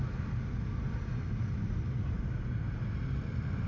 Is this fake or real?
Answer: real